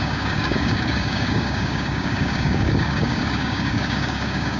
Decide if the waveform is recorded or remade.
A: remade